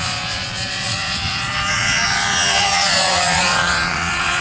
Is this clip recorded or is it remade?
remade